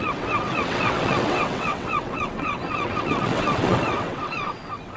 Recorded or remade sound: remade